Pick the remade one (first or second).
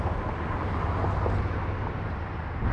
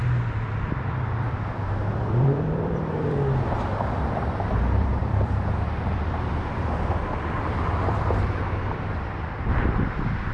second